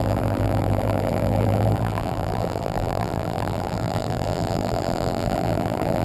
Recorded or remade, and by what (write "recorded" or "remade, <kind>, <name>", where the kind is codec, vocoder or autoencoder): remade, vocoder, BigVGAN v2